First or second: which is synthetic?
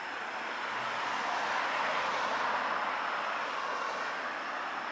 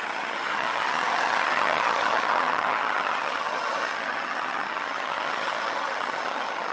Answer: second